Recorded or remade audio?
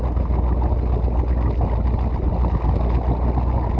recorded